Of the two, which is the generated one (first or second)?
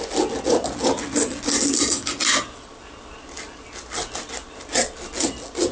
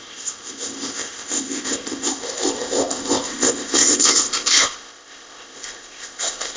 second